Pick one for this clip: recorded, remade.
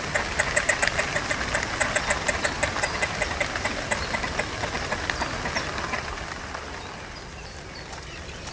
recorded